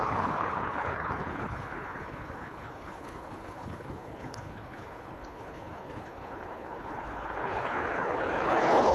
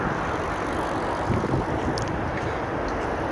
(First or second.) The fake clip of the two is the first